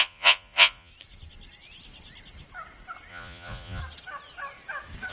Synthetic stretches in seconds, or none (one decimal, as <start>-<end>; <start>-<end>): 0.0-0.9; 3.1-3.8